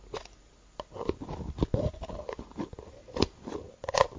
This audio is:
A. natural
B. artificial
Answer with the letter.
A